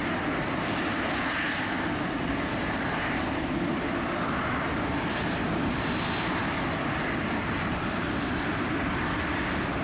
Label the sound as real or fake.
real